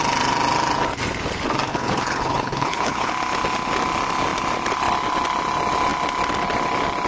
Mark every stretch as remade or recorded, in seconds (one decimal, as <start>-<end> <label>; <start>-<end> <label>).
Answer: 0.0-1.7 recorded; 1.7-3.1 remade; 3.1-7.1 recorded